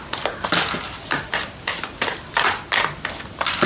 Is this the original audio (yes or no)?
yes